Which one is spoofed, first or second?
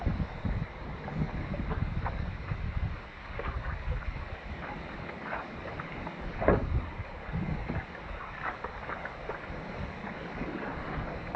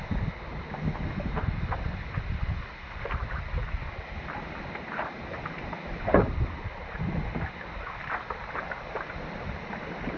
first